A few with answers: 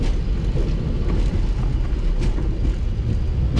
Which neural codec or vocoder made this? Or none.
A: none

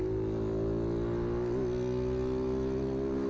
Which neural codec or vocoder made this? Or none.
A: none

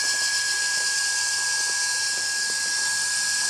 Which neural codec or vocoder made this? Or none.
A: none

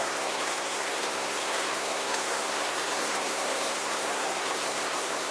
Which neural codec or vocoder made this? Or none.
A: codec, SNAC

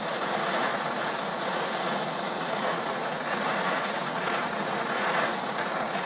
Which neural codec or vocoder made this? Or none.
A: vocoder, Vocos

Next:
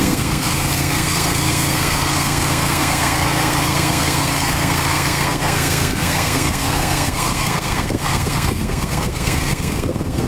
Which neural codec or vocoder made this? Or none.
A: codec, SNAC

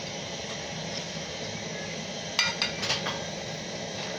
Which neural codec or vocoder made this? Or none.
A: none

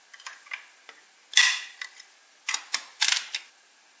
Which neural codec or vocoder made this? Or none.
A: none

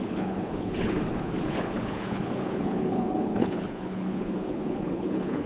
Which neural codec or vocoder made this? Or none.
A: codec, HILCodec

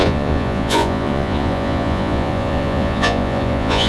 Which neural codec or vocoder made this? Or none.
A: vocoder, Vocos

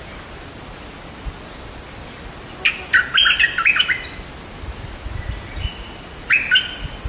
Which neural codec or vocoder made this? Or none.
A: none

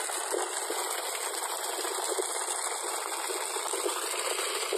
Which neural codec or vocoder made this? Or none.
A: none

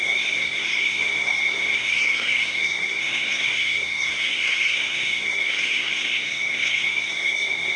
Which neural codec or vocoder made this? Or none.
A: codec, SNAC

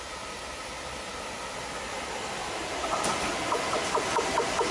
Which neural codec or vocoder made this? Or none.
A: none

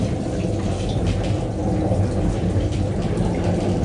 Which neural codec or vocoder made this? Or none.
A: none